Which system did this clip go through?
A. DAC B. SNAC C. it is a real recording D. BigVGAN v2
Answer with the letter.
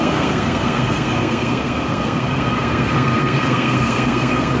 B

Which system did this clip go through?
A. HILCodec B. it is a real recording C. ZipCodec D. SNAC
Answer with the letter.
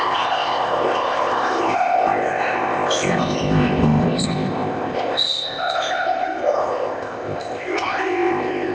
C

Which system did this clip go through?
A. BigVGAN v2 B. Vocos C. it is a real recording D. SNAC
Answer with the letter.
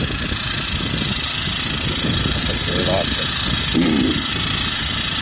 C